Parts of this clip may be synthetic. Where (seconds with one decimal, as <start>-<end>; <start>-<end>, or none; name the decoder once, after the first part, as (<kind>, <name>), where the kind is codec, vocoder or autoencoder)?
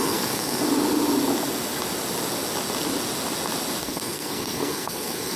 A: 0.0-0.6 (codec, SNAC); 3.8-5.4